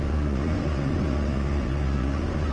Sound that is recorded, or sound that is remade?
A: remade